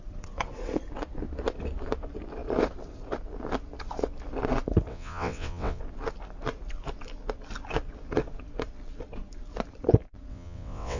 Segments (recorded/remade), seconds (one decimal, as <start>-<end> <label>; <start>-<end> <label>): 0.0-4.9 recorded; 4.9-5.8 remade; 5.8-10.3 recorded; 10.3-11.0 remade